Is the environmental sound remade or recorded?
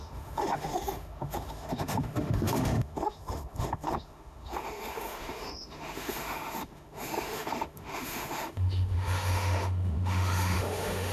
remade